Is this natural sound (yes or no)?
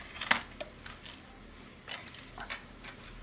yes